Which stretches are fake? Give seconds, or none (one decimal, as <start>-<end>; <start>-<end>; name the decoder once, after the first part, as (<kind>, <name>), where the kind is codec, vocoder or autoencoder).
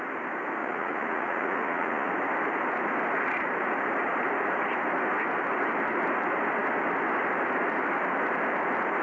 0.6-2.1 (vocoder, Vocos)